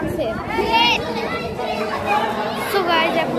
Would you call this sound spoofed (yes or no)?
no